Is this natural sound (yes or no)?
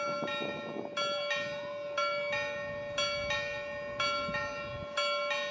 yes